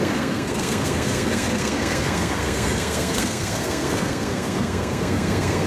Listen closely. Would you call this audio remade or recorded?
remade